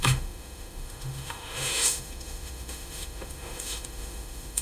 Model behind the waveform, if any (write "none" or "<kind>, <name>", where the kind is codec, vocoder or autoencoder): autoencoder, DAC-VAE